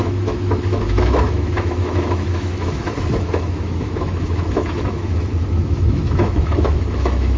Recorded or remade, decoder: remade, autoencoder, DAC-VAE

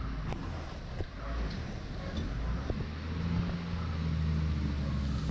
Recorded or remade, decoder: recorded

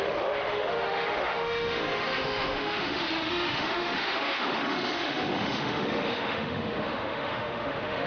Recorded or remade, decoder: remade, autoencoder, DAC-VAE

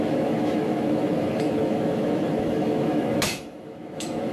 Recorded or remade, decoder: remade, autoencoder, DAC-VAE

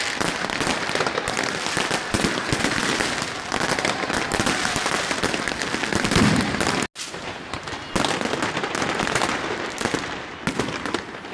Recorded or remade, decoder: recorded